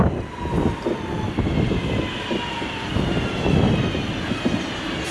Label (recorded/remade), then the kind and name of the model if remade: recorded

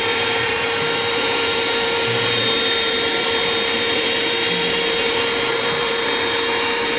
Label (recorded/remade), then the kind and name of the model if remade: remade, vocoder, BigVGAN v2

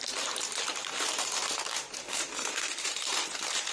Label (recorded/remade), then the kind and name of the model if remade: remade, vocoder, BigVGAN v2